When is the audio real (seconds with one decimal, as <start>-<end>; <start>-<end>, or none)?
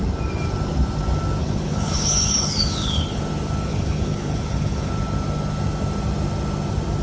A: 0.0-1.4; 3.2-3.7; 4.9-7.0